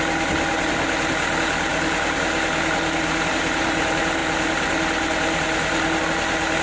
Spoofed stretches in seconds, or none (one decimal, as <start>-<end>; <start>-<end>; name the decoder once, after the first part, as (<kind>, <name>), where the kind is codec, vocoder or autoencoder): none